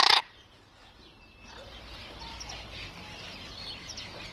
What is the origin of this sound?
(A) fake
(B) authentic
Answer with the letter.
B